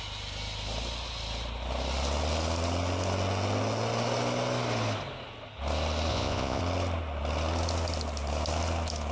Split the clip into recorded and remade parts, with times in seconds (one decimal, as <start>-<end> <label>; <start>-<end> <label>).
0.0-6.1 recorded; 6.1-6.6 remade; 6.6-9.1 recorded